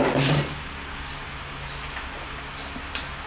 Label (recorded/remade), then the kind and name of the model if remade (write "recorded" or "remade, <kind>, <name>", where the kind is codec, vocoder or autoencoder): recorded